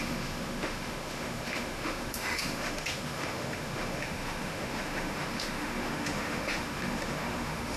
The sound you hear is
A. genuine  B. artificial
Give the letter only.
B